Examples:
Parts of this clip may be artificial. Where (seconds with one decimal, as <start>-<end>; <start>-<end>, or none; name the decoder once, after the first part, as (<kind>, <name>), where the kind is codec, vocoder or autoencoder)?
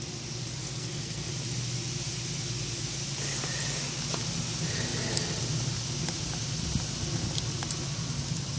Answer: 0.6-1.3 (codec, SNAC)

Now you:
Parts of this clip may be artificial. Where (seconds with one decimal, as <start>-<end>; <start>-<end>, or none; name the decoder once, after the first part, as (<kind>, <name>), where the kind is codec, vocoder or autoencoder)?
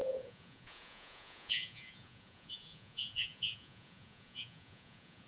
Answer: 0.0-5.3 (vocoder, Vocos)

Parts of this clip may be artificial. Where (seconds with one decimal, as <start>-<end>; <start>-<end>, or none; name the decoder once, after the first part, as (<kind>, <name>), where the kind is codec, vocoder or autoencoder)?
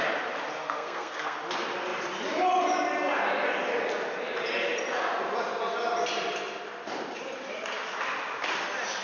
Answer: 0.6-1.4 (codec, SNAC)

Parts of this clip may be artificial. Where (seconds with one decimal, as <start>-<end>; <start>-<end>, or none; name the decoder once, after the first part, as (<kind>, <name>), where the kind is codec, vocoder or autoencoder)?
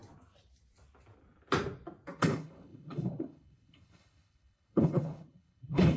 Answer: 2.2-6.0 (codec, HILCodec)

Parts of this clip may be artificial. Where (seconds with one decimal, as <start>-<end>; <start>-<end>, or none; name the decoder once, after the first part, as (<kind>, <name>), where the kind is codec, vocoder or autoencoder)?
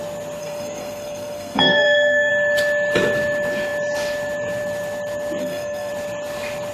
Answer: 0.4-2.3 (codec, SNAC); 5.4-5.9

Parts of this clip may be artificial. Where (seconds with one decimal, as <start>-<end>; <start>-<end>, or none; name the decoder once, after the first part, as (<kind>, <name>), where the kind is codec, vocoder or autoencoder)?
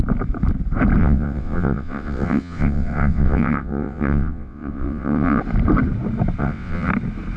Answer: 1.0-5.4 (vocoder, WaveNeXt); 6.4-6.9